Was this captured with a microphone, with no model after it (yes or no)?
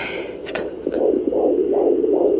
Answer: no